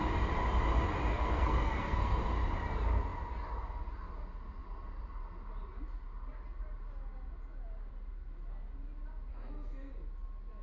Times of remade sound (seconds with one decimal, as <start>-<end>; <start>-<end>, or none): 1.1-2.2; 9.3-9.9